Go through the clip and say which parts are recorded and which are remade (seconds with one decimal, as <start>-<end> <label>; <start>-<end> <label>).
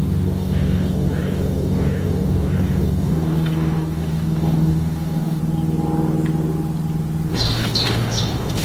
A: 0.0-5.4 remade; 5.4-7.3 recorded; 7.3-8.6 remade